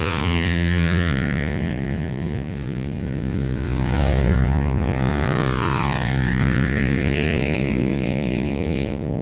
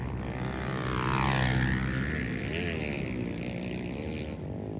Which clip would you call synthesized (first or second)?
first